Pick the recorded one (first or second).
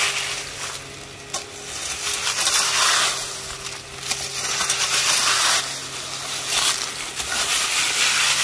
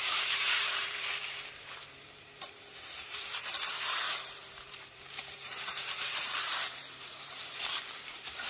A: first